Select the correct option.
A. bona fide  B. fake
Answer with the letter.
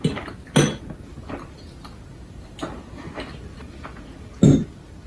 A